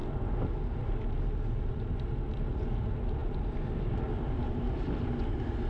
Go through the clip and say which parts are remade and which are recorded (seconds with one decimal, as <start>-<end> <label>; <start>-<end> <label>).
0.0-3.2 recorded; 3.2-5.0 remade; 5.0-5.7 recorded